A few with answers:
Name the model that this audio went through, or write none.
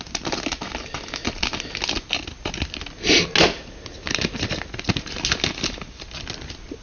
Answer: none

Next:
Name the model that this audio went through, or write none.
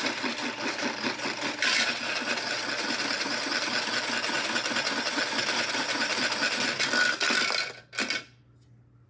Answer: none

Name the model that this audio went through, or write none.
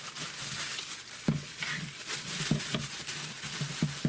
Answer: none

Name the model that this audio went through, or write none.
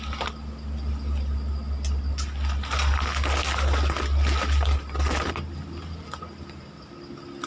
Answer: none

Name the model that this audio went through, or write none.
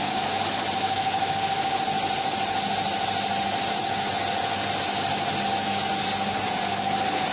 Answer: none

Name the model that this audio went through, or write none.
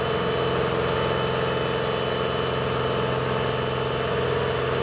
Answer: none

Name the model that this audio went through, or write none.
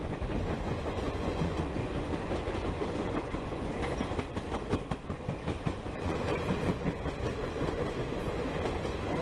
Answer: vocoder, Vocos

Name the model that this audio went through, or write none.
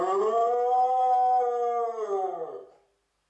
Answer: none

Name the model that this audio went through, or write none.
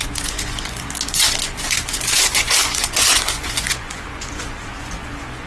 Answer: vocoder, Vocos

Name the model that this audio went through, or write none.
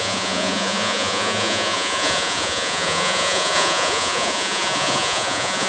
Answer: vocoder, Vocos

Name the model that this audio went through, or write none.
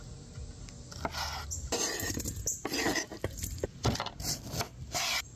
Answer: none